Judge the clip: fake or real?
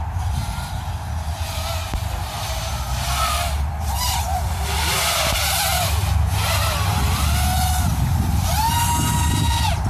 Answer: fake